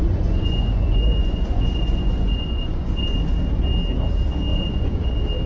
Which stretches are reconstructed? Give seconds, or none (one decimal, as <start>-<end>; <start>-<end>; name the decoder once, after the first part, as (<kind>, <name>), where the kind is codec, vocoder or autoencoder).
0.0-3.3 (vocoder, Vocos); 4.5-5.1